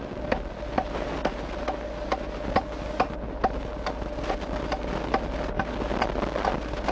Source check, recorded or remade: recorded